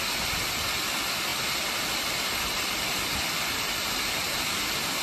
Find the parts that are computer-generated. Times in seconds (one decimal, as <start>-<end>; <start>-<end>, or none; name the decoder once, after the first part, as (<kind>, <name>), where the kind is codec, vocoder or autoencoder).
none